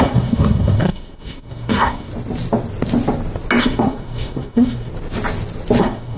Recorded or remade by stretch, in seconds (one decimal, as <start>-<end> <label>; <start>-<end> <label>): 0.0-2.1 remade; 2.1-3.6 recorded; 3.6-4.9 remade; 4.9-5.8 recorded; 5.8-6.2 remade